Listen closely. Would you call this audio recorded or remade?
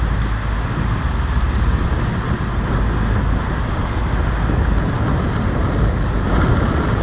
recorded